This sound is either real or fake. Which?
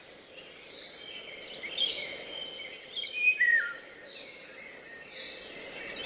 real